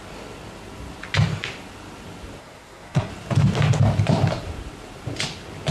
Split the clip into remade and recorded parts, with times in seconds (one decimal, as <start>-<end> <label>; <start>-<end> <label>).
0.0-2.4 recorded; 2.4-3.1 remade; 3.1-5.7 recorded